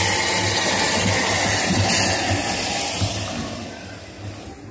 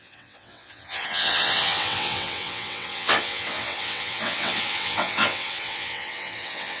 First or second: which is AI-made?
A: second